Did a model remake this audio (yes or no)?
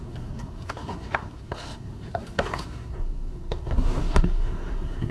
yes